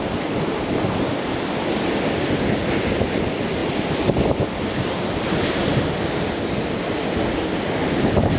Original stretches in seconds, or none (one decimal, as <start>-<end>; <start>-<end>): 0.0-8.4